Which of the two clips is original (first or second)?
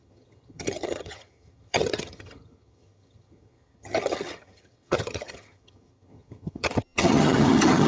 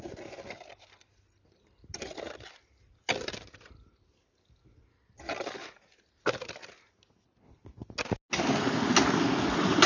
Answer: second